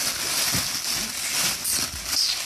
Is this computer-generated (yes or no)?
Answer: no